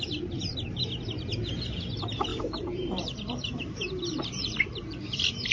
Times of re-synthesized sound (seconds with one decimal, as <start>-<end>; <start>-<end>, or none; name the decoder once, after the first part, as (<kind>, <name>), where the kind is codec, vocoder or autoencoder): 0.0-0.5 (vocoder, BigVGAN v2); 1.4-5.5